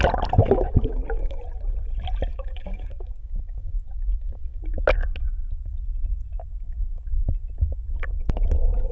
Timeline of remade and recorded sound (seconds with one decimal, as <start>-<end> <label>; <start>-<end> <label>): 0.0-0.4 recorded; 0.4-1.4 remade; 1.4-2.3 recorded; 2.3-4.6 remade; 4.6-8.9 recorded